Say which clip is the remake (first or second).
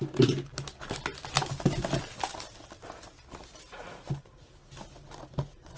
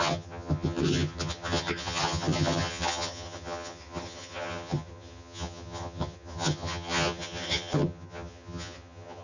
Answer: second